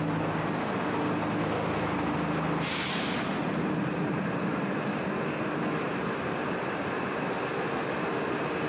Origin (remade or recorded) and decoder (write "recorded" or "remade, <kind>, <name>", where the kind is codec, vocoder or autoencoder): recorded